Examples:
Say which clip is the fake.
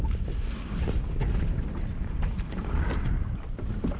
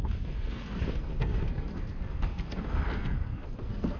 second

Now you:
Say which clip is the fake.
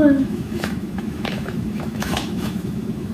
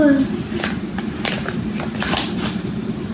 first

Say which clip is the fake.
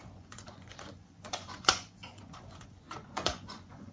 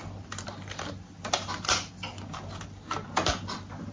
first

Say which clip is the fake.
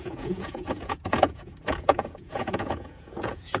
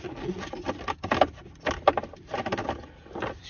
first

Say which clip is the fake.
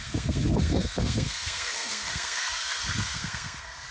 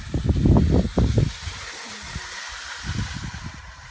first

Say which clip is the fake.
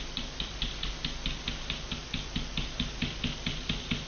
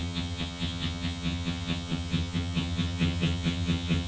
second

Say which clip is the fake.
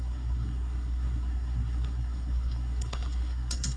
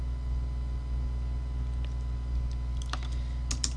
first